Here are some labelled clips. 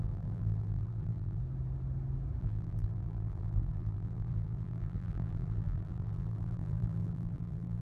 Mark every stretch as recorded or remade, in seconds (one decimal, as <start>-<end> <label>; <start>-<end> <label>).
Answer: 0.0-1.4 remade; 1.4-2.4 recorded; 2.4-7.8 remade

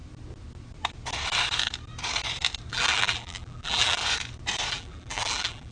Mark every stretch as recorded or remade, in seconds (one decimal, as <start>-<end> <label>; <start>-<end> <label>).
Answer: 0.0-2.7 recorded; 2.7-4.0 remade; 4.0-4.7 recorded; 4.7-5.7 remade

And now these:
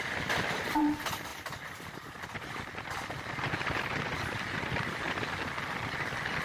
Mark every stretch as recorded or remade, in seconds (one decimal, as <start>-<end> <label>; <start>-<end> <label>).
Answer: 0.0-1.3 recorded; 1.3-5.1 remade; 5.1-6.4 recorded